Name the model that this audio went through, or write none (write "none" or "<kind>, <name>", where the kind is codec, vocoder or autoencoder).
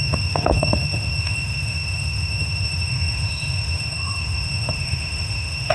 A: autoencoder, DAC-VAE